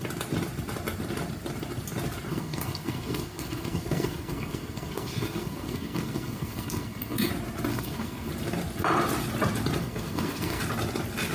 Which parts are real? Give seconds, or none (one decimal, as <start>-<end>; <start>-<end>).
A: 0.0-2.3; 7.3-7.7; 8.3-9.8; 10.6-11.3